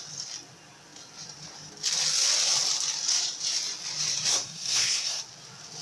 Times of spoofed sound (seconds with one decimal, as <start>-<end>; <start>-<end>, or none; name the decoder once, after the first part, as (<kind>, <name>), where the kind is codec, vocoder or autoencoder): 4.3-5.2 (codec, SNAC)